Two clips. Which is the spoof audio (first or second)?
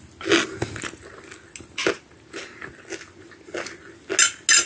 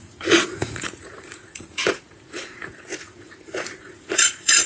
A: second